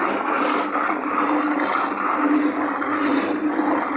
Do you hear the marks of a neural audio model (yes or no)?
no